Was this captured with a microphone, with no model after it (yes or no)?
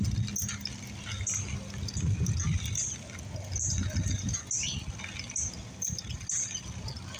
yes